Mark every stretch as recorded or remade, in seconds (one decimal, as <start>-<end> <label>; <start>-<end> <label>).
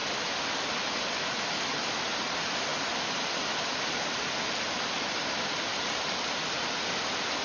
0.0-7.4 recorded